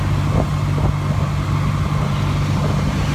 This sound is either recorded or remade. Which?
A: recorded